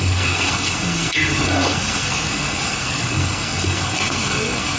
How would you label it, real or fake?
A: fake